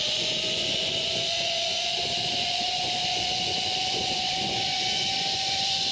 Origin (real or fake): fake